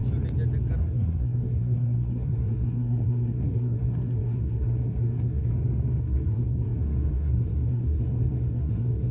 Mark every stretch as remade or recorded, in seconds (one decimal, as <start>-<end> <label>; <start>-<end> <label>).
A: 0.0-0.8 recorded; 0.8-5.5 remade; 5.5-6.0 recorded; 6.0-9.1 remade